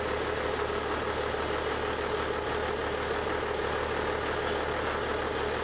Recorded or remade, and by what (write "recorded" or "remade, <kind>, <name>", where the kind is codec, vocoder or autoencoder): recorded